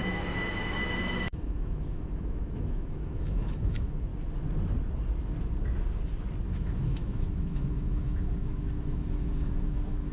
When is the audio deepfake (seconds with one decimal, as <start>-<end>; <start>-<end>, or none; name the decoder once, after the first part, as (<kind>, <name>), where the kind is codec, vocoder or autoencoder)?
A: 0.0-4.1 (autoencoder, DAC-VAE); 6.5-10.1